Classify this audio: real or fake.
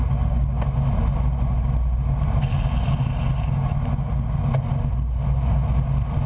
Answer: real